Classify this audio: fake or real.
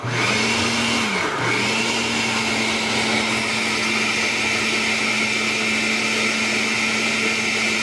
real